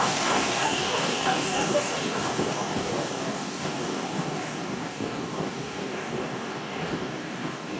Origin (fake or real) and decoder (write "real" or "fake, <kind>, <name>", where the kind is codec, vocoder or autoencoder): fake, codec, DAC